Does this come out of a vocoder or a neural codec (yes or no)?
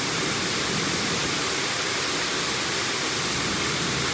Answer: no